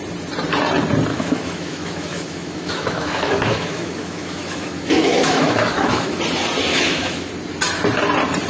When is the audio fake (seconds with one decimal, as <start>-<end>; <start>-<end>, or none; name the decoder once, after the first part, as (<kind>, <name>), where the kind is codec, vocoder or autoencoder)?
1.1-6.2 (autoencoder, DAC-VAE); 6.7-7.3